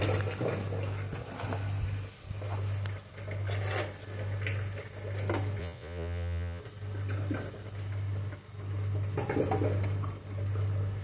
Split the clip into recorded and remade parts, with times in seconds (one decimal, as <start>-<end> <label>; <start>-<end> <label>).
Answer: 0.0-5.6 recorded; 5.6-6.6 remade; 6.6-11.0 recorded